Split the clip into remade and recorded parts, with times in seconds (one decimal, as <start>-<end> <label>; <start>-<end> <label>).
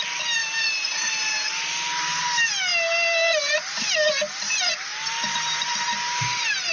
0.0-6.7 recorded